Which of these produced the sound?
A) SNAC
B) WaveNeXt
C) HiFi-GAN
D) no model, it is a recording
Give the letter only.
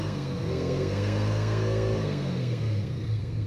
A